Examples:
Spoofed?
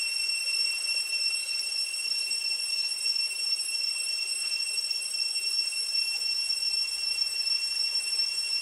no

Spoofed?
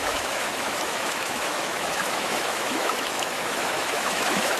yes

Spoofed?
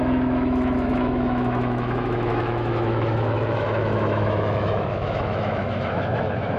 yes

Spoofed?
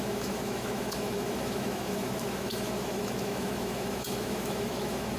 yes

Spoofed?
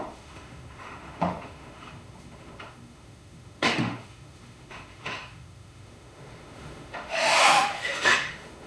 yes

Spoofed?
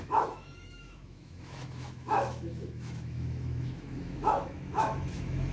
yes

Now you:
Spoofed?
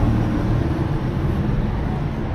no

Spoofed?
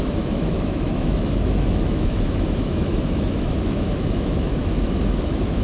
yes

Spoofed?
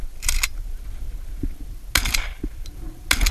no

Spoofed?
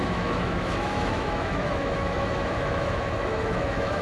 yes